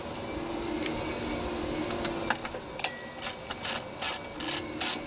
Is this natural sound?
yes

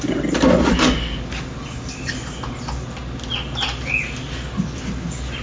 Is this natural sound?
yes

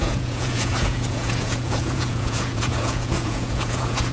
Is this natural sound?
no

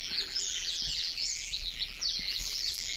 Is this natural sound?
no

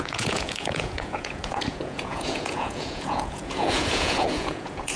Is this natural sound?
no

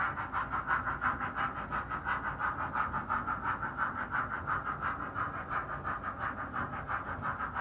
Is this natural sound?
yes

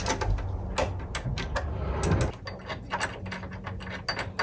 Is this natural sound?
yes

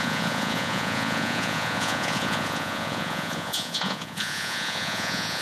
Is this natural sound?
no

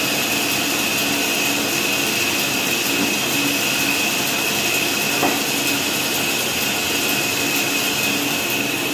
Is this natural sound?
yes